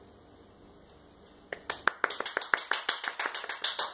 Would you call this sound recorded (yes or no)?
yes